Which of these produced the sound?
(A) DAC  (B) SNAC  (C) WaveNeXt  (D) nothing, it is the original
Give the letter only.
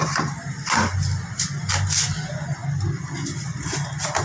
D